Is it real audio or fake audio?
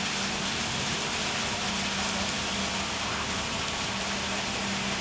real